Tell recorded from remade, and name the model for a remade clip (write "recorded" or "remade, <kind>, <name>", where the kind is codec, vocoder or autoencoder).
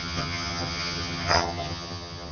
remade, vocoder, HiFi-GAN